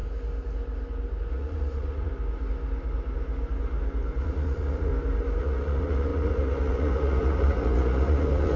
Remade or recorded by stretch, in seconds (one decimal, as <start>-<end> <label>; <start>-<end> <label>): 0.0-1.3 recorded; 1.3-2.1 remade; 2.1-4.2 recorded; 4.2-4.9 remade; 4.9-5.4 recorded; 5.4-8.6 remade